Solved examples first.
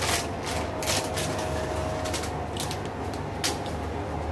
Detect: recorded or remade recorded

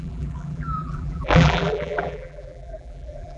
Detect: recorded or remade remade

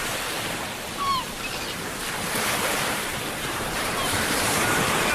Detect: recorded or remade remade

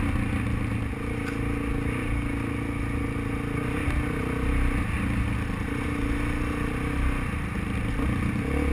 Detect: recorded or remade recorded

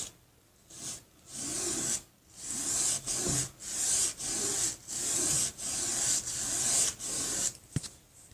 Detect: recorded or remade recorded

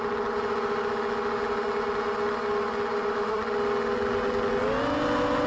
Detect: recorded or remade recorded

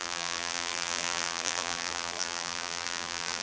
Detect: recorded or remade remade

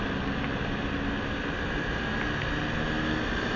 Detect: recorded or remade recorded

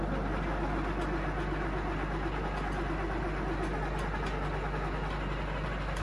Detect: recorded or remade recorded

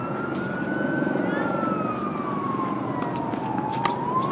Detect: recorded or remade recorded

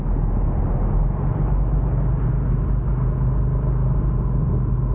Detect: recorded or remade recorded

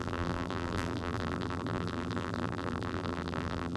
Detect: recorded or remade remade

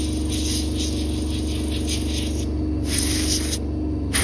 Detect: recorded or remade recorded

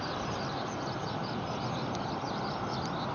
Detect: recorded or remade recorded